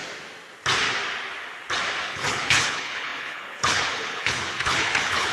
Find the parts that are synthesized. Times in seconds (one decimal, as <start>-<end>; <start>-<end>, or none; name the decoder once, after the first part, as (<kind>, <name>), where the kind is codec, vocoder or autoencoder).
2.0-5.3 (codec, HILCodec)